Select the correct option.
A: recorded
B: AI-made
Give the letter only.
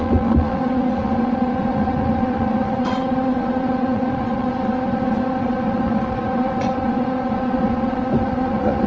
B